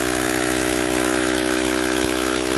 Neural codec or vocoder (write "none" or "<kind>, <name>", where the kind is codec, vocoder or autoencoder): autoencoder, DAC-VAE